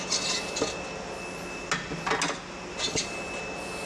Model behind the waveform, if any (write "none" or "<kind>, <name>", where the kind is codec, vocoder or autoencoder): none